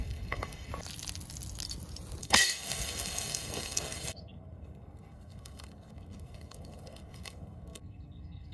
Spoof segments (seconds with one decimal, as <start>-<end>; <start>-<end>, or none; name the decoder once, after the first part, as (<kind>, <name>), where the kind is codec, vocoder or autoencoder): 0.0-0.7 (codec, SNAC); 2.2-8.5